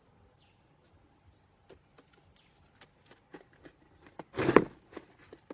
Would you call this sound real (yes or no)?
yes